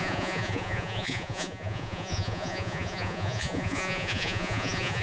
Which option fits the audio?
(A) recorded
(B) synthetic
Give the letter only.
B